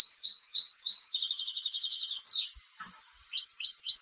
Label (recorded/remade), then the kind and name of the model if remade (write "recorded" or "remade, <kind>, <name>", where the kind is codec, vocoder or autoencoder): remade, codec, DAC